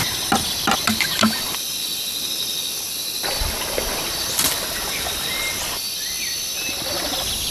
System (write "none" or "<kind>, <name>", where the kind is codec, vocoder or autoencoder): none